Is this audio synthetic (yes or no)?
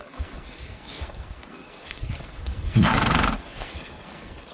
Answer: yes